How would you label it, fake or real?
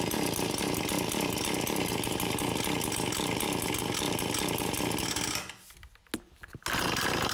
real